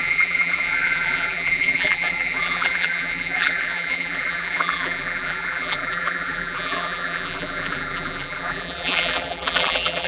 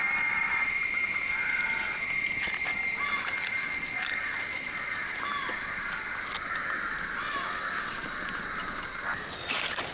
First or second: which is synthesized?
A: first